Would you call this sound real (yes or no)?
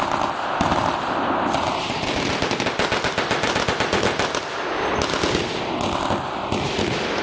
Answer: yes